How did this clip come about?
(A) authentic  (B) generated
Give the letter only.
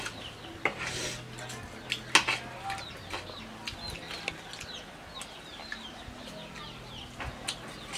A